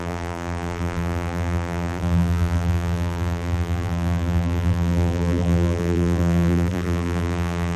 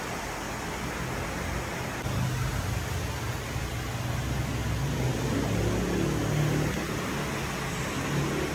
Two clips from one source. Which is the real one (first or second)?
second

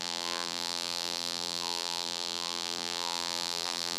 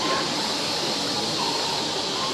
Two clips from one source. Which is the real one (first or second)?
second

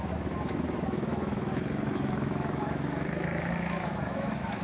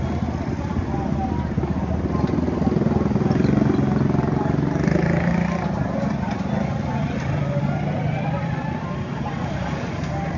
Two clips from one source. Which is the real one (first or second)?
second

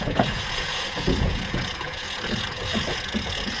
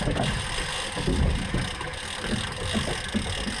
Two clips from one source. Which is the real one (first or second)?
second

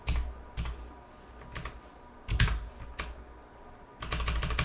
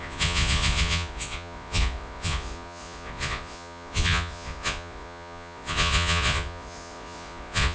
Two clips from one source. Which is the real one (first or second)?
first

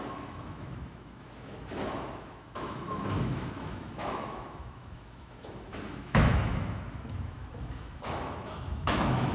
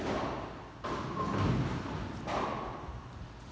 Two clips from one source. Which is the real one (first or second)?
second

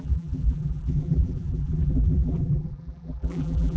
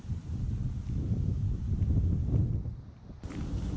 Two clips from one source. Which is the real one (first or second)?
second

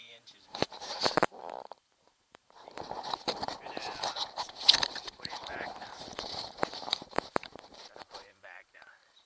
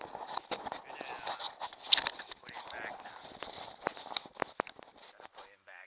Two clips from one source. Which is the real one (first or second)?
second